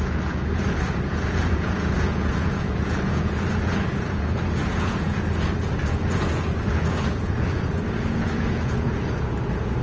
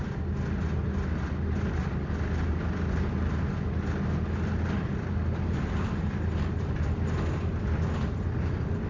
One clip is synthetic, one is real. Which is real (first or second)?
second